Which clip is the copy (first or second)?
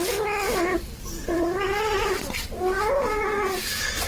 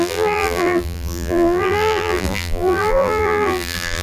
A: second